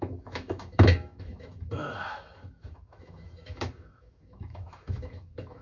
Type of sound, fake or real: fake